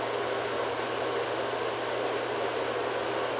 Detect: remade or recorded recorded